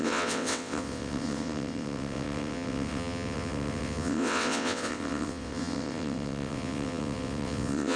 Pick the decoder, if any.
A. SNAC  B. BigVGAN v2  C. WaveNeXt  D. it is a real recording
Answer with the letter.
C